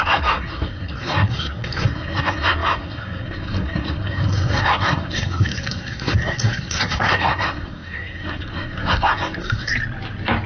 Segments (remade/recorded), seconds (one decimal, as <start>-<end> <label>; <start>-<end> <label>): 0.0-9.7 remade; 9.7-10.5 recorded